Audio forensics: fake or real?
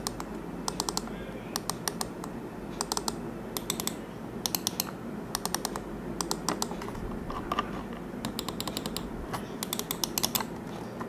real